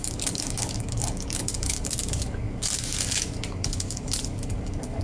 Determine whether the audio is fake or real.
fake